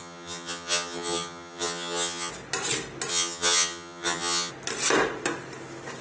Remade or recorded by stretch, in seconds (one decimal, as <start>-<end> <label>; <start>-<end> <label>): 0.0-2.3 remade; 2.3-3.1 recorded; 3.1-4.5 remade; 4.5-6.0 recorded